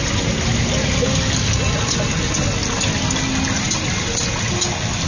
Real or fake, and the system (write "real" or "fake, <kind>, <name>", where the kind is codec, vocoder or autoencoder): real